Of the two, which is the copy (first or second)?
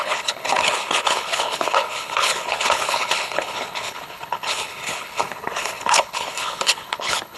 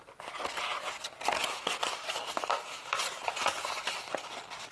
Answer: first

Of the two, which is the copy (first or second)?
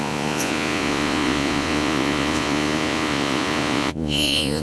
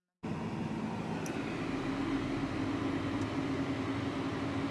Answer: first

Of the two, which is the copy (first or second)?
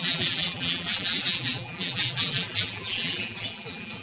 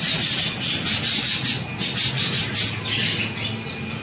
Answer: first